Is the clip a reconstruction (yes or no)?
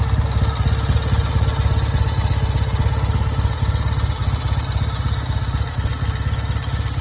no